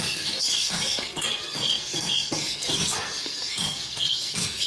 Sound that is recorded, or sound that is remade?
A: remade